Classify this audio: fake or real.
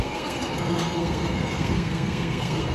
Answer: fake